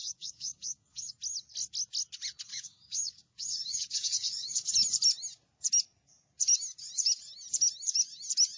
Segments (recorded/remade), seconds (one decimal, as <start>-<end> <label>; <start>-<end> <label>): 0.0-1.1 remade; 1.1-2.5 recorded; 2.5-4.7 remade; 4.7-8.6 recorded